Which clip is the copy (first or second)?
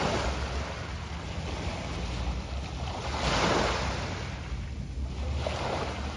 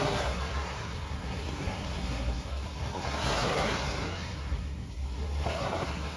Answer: second